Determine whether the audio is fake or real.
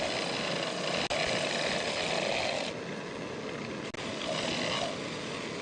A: real